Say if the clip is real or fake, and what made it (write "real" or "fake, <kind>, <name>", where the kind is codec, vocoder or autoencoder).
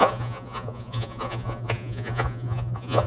fake, vocoder, Vocos